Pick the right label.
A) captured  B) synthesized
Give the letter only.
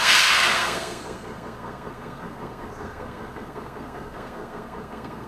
B